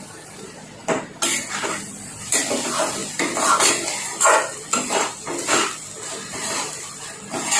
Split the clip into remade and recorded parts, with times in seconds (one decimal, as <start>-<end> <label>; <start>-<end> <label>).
0.0-7.6 recorded